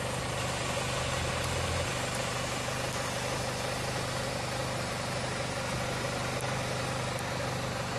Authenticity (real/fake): real